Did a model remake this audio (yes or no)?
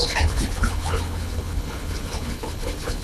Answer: yes